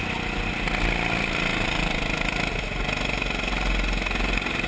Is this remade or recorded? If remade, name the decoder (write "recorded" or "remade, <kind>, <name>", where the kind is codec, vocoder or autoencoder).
recorded